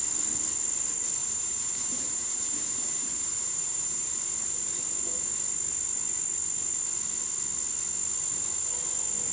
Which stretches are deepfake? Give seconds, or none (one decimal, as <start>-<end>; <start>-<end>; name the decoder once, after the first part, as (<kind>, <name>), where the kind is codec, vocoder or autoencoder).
1.2-4.1 (vocoder, BigVGAN v2)